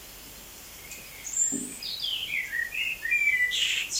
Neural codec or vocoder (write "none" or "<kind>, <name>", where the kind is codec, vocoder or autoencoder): vocoder, BigVGAN v2